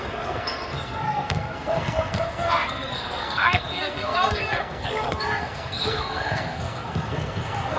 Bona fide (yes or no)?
no